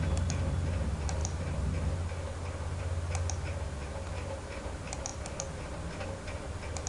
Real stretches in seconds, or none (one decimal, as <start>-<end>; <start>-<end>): 0.0-6.9

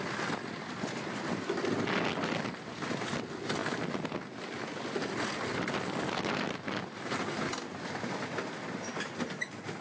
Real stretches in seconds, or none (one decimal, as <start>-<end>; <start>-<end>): 0.0-9.8

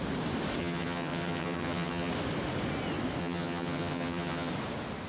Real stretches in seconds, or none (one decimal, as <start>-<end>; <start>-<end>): 0.0-0.6; 2.1-3.2; 4.5-5.1

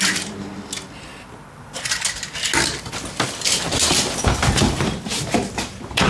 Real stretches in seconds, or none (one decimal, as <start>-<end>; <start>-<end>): 0.5-4.2